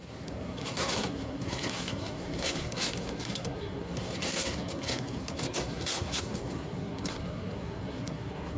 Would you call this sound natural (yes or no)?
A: no